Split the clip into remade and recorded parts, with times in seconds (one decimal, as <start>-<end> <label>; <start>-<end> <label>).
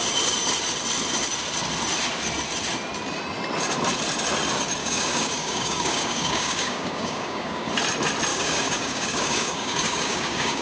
0.0-4.8 recorded; 4.8-7.7 remade; 7.7-8.3 recorded; 8.3-10.6 remade